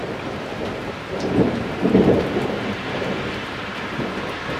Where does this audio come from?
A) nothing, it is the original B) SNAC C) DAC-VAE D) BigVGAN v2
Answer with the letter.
D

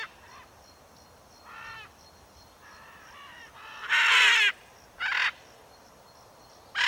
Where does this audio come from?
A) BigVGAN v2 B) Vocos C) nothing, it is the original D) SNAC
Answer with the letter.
C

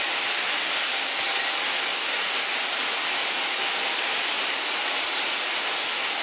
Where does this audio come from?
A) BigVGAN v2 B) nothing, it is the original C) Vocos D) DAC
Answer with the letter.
B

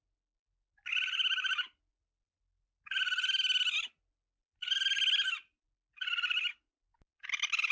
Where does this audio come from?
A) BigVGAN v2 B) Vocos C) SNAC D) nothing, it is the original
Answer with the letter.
D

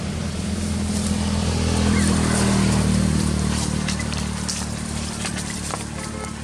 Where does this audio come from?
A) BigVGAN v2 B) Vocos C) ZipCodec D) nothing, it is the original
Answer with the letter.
A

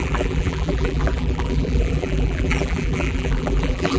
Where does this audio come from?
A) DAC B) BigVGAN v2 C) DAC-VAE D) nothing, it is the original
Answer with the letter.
B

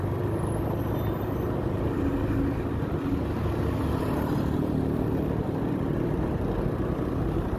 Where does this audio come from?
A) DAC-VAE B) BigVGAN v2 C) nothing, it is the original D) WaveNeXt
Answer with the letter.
C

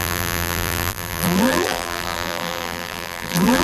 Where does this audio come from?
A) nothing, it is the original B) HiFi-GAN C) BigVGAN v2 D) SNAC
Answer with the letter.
C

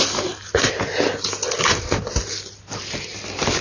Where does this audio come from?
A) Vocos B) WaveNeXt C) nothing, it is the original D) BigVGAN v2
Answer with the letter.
C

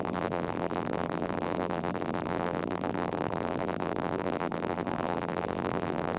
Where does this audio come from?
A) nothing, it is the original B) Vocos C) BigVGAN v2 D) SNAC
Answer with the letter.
C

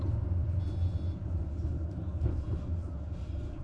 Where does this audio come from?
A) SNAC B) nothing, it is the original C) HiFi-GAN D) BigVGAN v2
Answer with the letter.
B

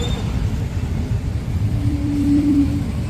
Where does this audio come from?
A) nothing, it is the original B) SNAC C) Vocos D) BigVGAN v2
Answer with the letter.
D